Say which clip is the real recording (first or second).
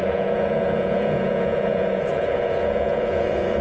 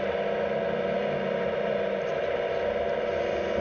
second